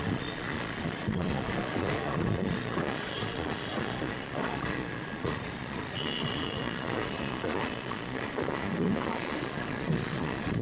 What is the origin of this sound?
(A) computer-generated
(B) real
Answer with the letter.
A